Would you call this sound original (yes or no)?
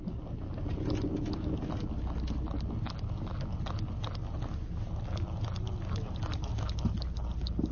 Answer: yes